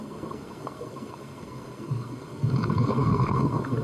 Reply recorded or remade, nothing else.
remade